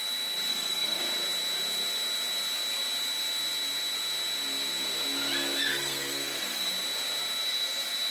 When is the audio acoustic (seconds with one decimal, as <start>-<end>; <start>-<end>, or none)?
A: 0.0-0.5; 1.0-5.7; 6.7-8.1